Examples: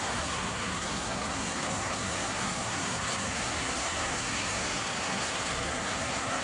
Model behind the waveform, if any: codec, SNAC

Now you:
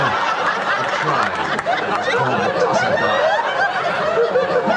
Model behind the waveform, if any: none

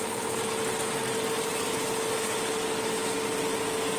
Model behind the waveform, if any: none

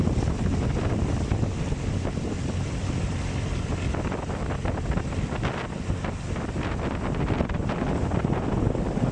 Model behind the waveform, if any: none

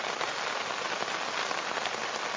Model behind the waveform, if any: none